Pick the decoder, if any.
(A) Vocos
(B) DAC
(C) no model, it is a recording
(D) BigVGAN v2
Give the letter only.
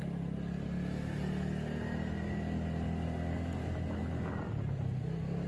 C